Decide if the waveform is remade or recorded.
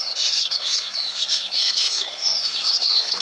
remade